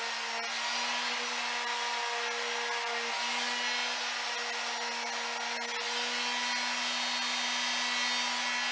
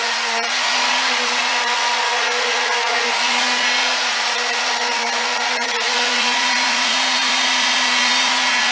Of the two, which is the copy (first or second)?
second